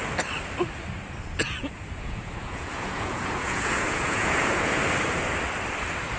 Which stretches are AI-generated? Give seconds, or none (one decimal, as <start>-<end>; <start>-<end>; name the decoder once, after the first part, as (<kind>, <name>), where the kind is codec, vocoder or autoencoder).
1.4-4.8 (vocoder, Vocos)